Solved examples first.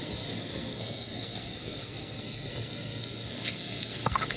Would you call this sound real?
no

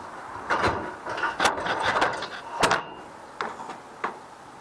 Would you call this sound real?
yes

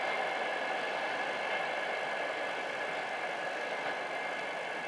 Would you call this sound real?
yes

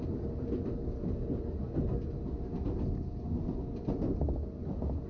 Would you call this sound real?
yes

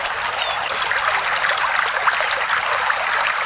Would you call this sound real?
yes